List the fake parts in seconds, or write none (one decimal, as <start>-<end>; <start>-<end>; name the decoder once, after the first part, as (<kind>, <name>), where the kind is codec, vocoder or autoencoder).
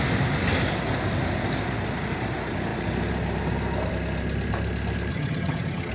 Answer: 5.1-5.9 (vocoder, HiFi-GAN)